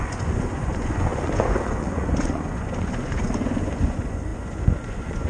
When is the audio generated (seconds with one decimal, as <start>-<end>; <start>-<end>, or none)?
0.0-5.3